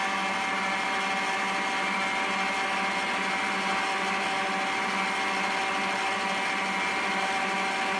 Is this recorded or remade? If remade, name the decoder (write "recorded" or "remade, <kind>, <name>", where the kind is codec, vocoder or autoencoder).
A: recorded